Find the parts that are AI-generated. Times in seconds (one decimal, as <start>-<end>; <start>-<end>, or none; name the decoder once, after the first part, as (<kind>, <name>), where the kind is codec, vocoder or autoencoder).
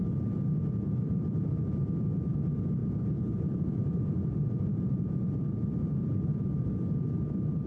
1.0-1.5 (vocoder, BigVGAN v2); 2.8-6.2